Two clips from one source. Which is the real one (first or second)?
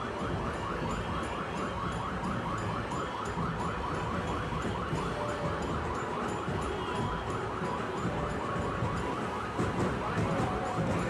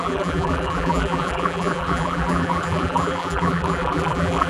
first